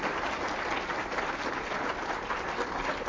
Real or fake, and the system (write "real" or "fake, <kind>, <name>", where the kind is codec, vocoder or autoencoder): real